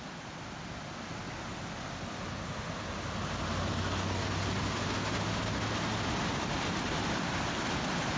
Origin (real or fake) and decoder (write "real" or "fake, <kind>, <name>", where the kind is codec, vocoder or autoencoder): real